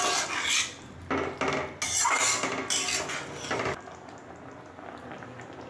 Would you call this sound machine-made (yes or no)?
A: no